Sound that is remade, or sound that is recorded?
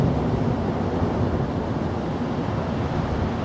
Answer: recorded